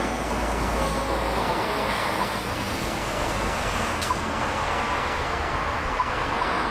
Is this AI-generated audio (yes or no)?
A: yes